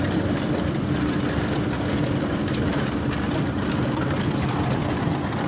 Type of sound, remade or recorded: recorded